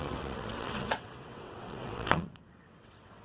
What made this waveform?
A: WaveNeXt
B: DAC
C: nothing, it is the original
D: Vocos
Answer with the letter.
A